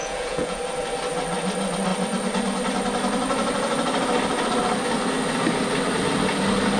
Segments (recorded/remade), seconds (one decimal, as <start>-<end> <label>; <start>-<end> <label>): 0.0-0.6 remade; 0.6-6.8 recorded